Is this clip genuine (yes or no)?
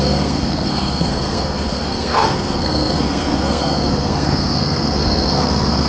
no